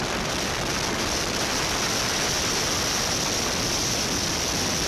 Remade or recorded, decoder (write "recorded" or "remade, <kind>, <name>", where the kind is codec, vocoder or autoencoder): recorded